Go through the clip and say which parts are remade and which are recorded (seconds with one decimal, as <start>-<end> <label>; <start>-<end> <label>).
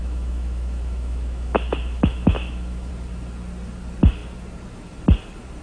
0.0-2.9 remade; 2.9-5.6 recorded